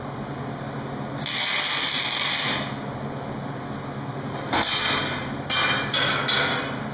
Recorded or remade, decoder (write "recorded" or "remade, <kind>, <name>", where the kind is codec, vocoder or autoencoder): recorded